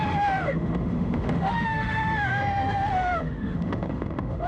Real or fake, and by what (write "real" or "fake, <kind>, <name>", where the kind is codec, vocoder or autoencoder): fake, autoencoder, DAC-VAE